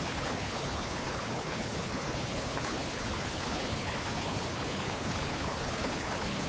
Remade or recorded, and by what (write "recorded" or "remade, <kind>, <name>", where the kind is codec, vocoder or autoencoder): remade, codec, HILCodec